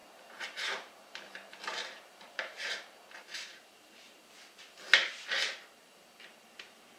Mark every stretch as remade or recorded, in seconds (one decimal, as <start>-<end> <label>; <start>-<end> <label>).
0.0-4.2 remade; 4.2-7.0 recorded